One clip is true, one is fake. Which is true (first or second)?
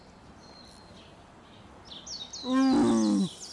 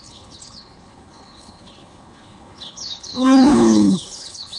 first